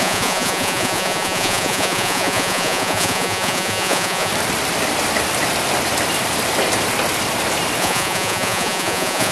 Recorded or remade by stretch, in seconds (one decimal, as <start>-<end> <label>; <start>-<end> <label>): 0.0-4.3 remade; 4.3-7.8 recorded; 7.8-9.3 remade